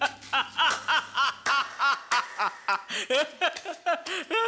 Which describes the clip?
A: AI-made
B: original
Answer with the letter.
B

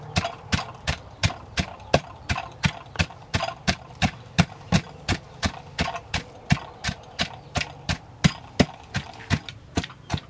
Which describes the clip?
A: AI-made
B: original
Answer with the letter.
B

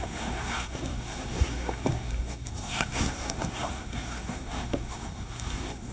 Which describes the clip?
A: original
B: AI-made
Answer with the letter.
B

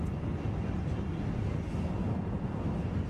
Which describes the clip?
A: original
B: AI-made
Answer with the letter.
A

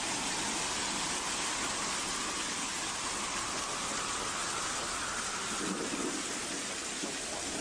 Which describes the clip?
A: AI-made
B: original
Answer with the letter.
B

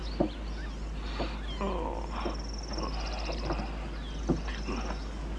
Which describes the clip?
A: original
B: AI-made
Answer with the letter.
A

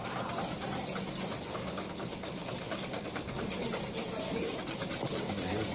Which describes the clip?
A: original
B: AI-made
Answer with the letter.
A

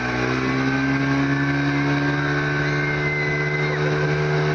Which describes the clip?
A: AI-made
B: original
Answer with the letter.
B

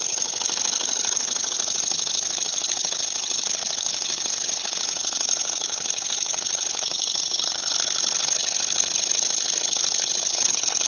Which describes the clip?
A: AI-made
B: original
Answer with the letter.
A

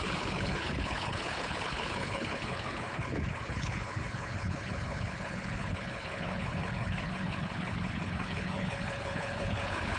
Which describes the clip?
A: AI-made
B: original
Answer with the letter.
A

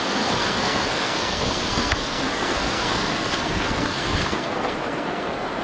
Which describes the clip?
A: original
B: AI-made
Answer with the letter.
B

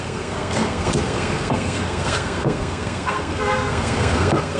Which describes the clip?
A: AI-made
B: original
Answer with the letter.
A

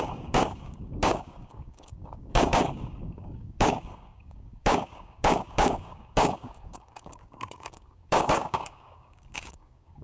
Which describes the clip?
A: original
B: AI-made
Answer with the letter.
B